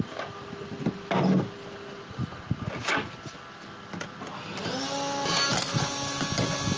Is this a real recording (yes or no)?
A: yes